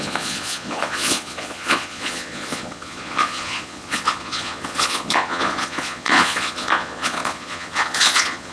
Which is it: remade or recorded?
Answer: remade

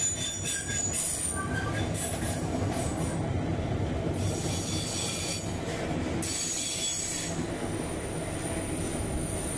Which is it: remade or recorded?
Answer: recorded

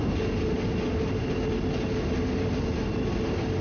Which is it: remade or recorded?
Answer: recorded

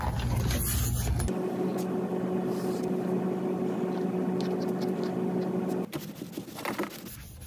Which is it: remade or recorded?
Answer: recorded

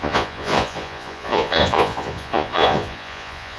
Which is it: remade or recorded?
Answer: remade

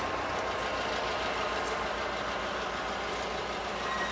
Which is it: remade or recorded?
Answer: recorded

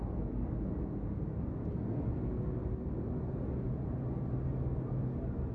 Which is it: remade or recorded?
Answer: recorded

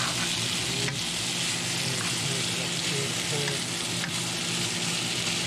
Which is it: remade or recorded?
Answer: recorded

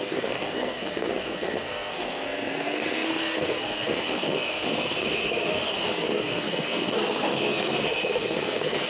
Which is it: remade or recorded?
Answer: remade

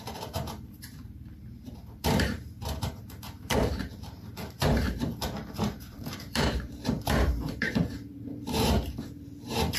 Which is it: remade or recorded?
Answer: remade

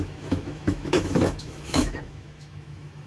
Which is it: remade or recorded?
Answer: remade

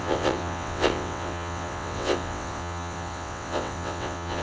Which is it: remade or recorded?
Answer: remade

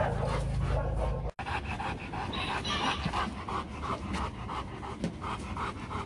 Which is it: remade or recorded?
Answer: recorded